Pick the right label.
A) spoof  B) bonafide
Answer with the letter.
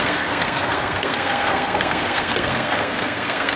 A